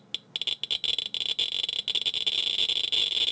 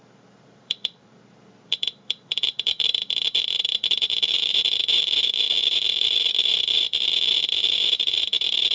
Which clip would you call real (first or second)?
first